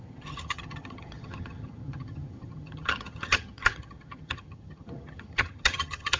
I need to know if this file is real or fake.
fake